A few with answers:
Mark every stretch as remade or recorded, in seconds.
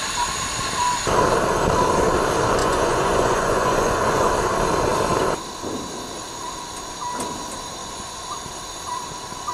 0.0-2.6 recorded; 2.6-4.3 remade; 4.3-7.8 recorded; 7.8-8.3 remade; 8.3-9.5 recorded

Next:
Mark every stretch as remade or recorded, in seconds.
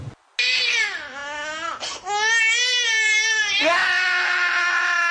0.0-5.1 recorded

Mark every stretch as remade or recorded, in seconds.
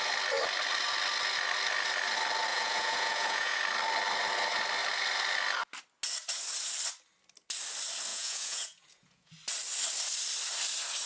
0.0-2.5 recorded; 2.5-3.6 remade; 3.6-8.1 recorded; 8.1-9.3 remade; 9.3-11.1 recorded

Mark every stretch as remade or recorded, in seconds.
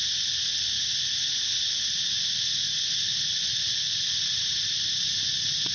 0.0-5.7 recorded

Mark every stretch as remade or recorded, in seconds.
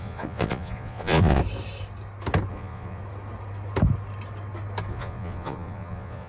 0.0-1.4 remade; 1.4-2.5 recorded; 2.5-3.0 remade; 3.0-4.9 recorded; 4.9-6.3 remade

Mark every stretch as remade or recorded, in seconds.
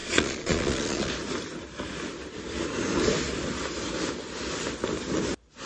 0.0-1.1 remade; 1.1-5.7 recorded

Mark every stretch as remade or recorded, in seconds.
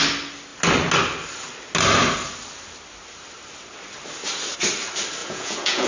0.0-5.2 recorded; 5.2-5.9 remade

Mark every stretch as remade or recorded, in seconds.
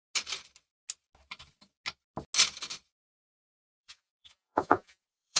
0.0-3.7 recorded; 3.7-5.4 remade